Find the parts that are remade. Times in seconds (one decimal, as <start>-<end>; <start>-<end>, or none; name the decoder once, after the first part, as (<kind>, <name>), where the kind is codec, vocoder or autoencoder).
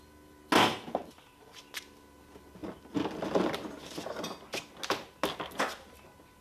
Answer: 0.7-1.6 (vocoder, BigVGAN v2)